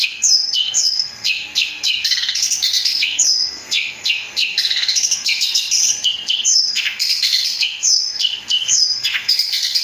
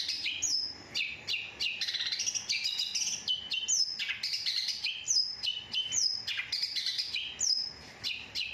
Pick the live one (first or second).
second